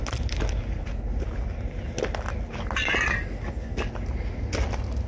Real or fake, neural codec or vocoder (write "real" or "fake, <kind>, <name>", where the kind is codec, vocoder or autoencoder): real